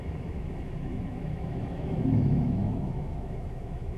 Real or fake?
fake